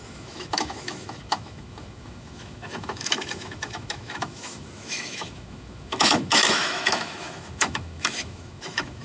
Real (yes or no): no